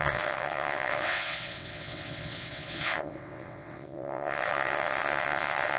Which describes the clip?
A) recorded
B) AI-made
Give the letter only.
B